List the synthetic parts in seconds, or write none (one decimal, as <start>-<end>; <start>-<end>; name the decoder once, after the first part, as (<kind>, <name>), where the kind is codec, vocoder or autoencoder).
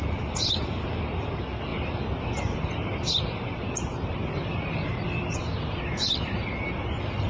none